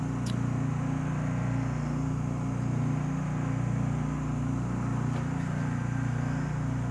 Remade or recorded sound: remade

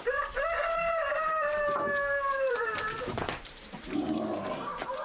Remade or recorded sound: remade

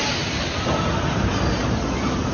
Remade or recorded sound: recorded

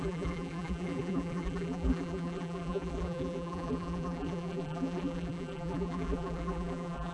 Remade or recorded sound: remade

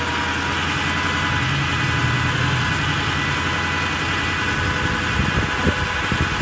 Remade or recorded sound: recorded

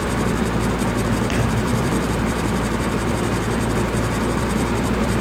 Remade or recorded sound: remade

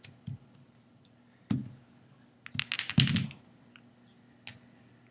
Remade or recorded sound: recorded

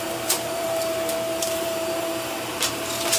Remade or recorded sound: remade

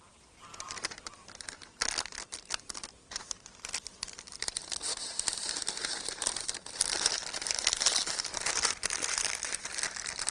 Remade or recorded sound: remade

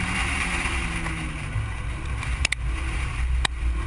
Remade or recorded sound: remade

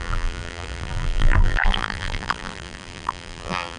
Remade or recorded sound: remade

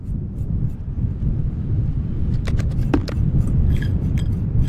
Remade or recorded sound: recorded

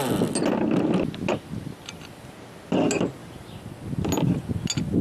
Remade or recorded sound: recorded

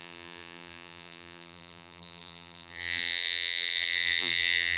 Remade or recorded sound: remade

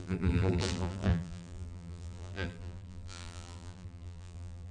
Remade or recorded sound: remade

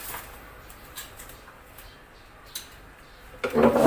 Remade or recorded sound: recorded